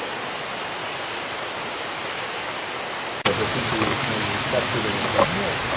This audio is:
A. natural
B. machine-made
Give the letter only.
A